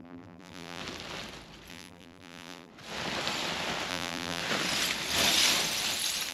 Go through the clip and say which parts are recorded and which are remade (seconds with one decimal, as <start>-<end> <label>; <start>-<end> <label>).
0.0-0.8 remade; 0.8-1.7 recorded; 1.7-2.7 remade; 2.7-3.9 recorded; 3.9-4.4 remade; 4.4-6.3 recorded